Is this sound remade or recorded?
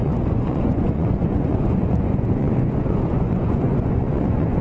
remade